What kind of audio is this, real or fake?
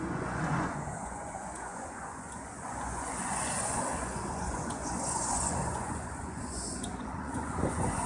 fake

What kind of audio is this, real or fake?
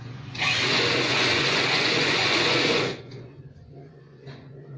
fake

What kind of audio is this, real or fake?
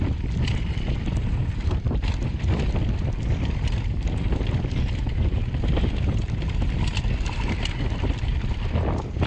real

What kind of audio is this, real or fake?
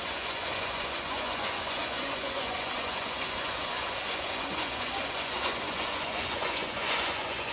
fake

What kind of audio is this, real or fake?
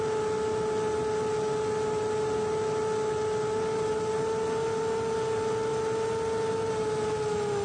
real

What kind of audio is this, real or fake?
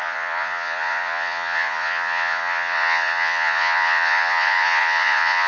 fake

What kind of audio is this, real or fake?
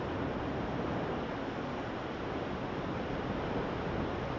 real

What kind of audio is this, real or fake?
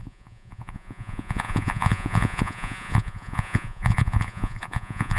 fake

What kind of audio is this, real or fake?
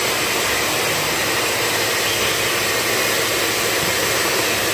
real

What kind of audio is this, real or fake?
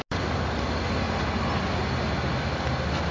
real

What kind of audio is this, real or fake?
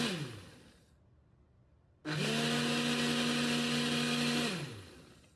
real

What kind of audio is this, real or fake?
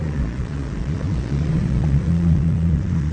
fake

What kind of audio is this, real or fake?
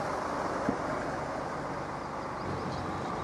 real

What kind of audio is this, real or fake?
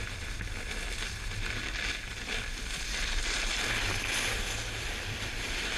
real